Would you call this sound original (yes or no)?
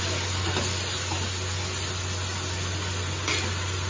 yes